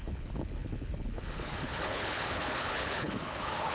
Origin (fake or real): fake